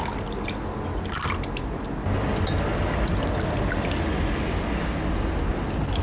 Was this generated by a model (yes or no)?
no